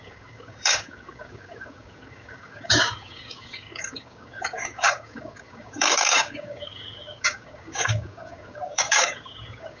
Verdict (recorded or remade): remade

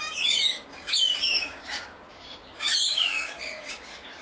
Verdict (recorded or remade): remade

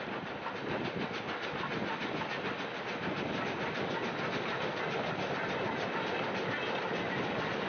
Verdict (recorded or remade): recorded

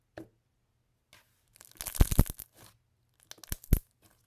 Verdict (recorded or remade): recorded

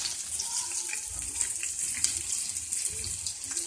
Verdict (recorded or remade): recorded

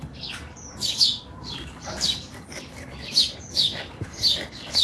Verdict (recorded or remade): remade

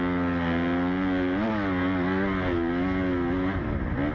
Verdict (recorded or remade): recorded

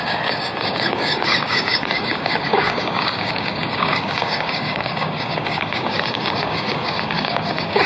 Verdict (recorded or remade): remade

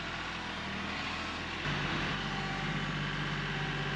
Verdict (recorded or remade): recorded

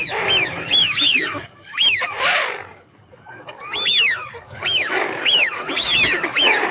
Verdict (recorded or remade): remade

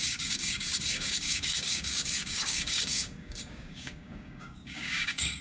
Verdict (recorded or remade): remade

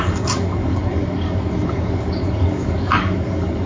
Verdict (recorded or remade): remade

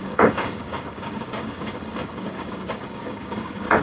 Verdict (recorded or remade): remade